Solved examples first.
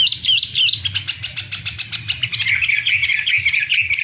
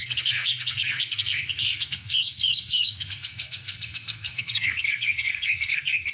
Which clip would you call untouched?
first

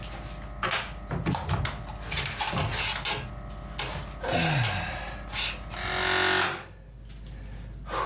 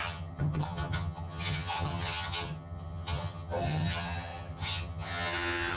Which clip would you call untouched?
first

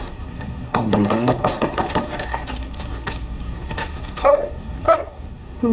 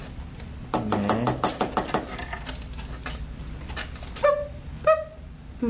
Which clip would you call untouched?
second